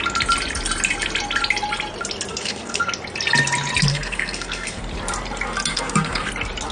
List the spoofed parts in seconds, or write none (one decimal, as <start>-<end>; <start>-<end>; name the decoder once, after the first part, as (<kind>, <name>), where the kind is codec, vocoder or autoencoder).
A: 2.3-2.9 (codec, SNAC); 3.9-4.8; 5.7-6.3